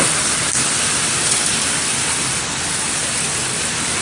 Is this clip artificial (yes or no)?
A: yes